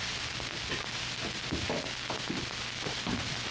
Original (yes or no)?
yes